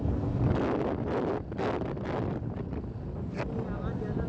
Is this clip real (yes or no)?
yes